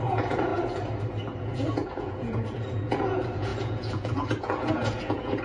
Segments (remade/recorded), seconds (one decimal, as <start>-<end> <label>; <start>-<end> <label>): 0.0-0.5 remade; 0.5-1.4 recorded; 1.4-5.4 remade